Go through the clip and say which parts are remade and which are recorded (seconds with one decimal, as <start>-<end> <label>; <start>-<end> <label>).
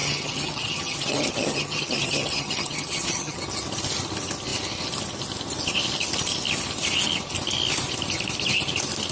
0.0-3.4 remade; 3.4-9.1 recorded